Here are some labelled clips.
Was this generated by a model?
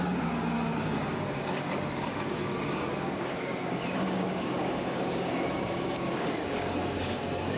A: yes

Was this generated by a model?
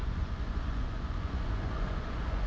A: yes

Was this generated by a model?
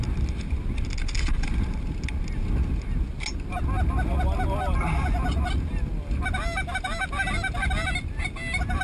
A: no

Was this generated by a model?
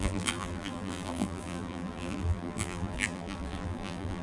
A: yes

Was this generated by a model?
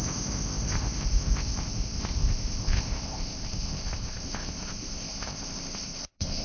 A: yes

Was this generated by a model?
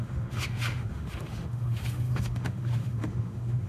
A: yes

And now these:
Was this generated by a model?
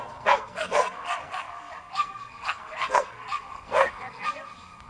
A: yes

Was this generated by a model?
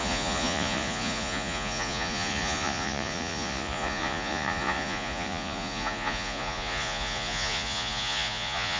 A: yes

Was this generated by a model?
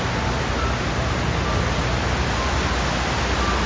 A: no